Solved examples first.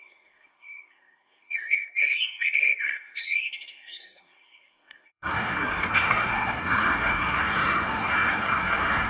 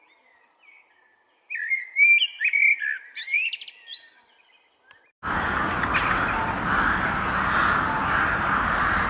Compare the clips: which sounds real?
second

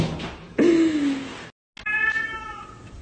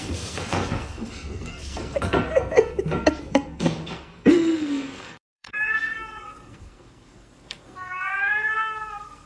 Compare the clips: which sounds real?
first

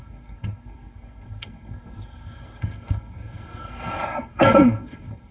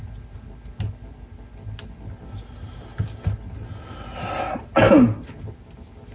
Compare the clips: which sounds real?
second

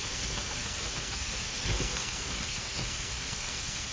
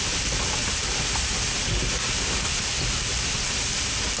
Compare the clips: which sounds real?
second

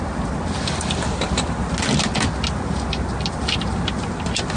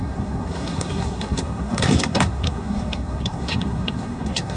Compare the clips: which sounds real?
first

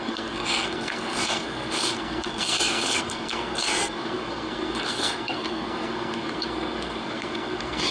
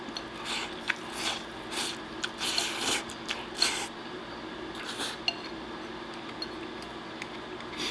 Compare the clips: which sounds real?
second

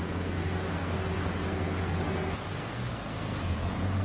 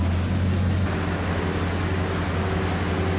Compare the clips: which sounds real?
second